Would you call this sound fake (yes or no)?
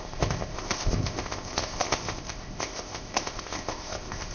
yes